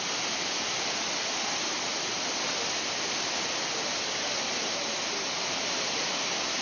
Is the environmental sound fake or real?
real